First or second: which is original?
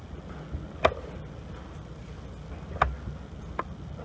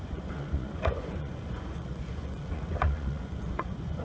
first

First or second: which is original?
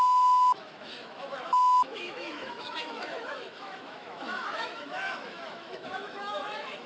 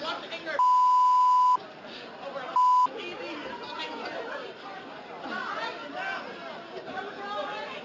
second